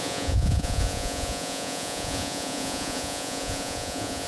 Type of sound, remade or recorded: remade